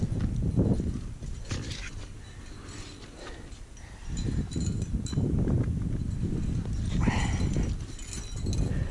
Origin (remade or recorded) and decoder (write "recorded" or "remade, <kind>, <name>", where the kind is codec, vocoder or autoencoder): recorded